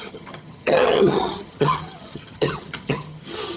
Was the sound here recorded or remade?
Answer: remade